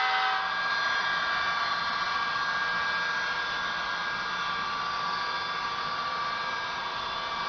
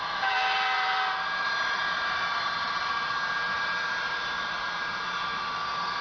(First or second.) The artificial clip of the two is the second